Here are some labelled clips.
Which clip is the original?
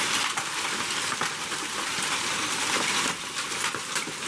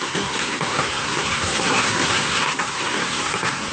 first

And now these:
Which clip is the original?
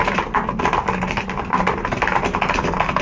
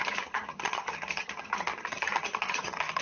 first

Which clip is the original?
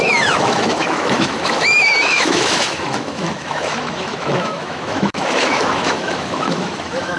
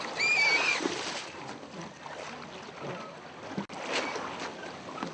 second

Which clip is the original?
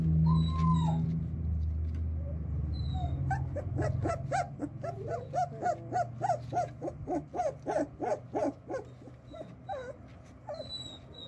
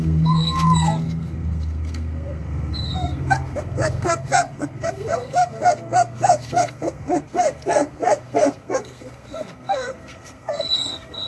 first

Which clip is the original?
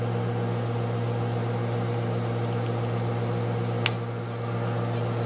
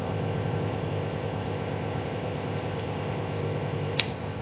first